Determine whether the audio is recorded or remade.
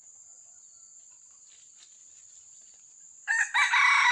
recorded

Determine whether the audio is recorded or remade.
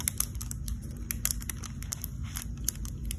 recorded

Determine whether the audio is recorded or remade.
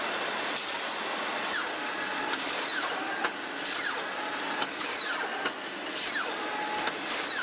recorded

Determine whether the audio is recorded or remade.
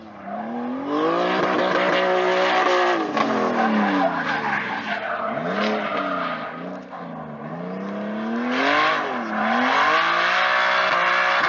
recorded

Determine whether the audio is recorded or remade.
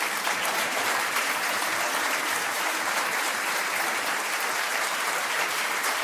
remade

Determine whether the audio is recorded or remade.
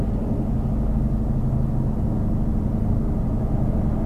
recorded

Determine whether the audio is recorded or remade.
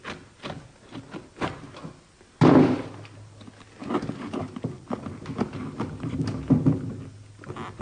recorded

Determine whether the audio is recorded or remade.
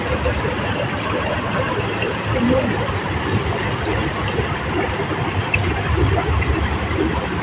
recorded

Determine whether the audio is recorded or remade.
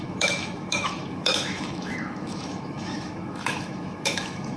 remade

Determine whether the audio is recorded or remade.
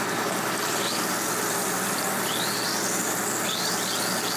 recorded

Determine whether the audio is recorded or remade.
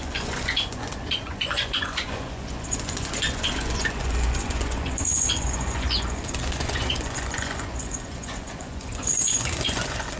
remade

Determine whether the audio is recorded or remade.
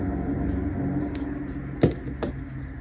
recorded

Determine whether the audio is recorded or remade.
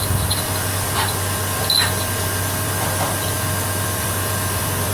remade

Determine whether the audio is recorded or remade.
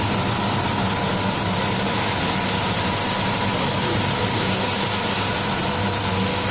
recorded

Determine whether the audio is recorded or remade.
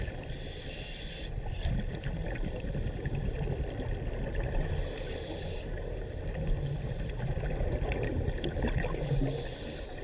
recorded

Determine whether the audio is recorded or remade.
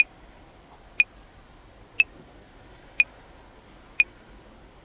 recorded